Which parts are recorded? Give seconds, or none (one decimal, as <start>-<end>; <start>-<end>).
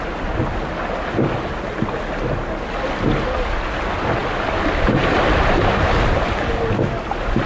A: 0.0-7.5